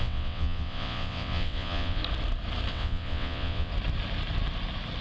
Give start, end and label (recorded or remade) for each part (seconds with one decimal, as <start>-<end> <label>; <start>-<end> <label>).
0.0-2.0 remade; 2.0-2.7 recorded; 2.7-3.7 remade; 3.7-5.0 recorded